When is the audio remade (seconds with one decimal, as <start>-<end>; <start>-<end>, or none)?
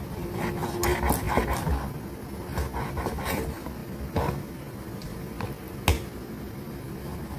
none